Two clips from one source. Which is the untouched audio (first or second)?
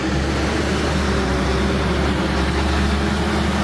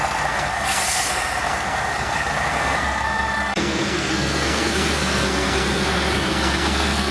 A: first